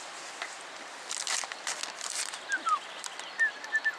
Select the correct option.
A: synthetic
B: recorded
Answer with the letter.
B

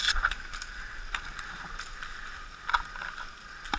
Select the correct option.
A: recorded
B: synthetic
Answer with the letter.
A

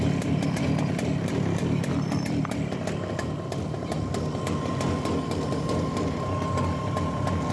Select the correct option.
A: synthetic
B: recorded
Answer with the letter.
B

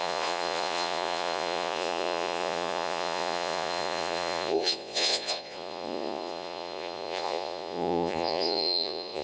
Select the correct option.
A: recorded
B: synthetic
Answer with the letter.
B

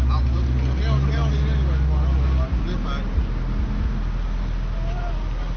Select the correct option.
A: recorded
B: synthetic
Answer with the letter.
A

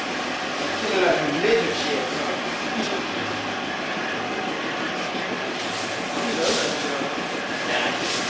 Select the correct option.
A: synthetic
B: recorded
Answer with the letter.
B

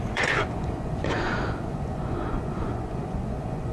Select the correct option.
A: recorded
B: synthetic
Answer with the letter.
B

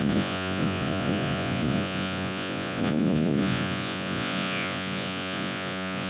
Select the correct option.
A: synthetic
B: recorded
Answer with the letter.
A